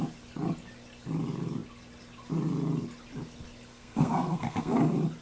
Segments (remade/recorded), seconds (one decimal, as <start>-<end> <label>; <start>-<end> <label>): 0.0-3.7 recorded; 3.7-4.8 remade; 4.8-5.2 recorded